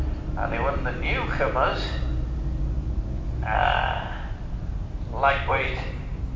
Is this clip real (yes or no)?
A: yes